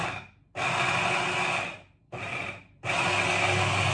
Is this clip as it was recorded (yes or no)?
yes